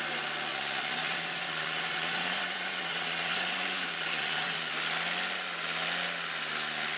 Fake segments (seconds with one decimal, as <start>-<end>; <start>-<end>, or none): 0.5-4.7